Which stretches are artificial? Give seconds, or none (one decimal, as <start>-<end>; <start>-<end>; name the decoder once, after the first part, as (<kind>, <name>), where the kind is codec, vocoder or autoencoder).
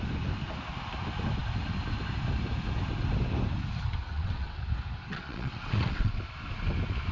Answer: 4.1-4.6 (vocoder, WaveNeXt); 5.1-6.2